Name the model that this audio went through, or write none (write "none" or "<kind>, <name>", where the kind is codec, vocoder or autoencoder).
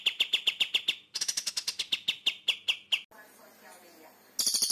none